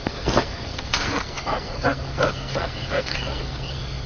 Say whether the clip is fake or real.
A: fake